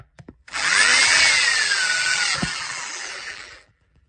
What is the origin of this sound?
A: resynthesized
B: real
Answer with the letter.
A